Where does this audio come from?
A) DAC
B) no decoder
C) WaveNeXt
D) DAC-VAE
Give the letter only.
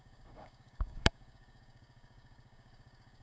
A